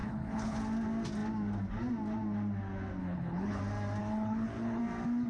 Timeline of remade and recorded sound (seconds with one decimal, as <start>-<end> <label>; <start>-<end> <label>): 0.0-0.6 remade; 0.6-3.0 recorded; 3.0-3.6 remade; 3.6-4.0 recorded; 4.0-4.8 remade; 4.8-5.3 recorded